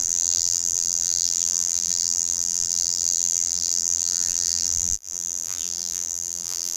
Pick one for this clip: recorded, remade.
remade